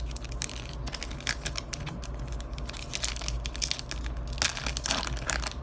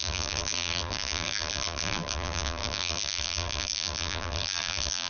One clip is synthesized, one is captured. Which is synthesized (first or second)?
second